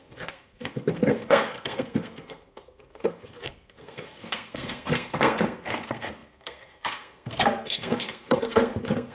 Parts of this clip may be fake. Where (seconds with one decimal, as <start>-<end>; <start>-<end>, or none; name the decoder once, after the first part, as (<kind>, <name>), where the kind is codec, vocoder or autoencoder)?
0.0-9.1 (codec, SNAC)